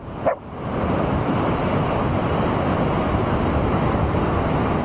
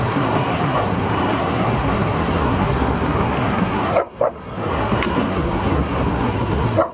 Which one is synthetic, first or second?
second